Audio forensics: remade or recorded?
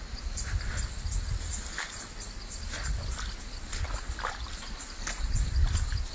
recorded